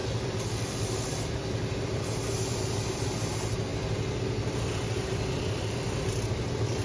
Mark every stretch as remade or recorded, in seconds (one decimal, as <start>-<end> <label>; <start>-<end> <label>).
0.0-3.7 remade; 3.7-4.5 recorded; 4.5-6.8 remade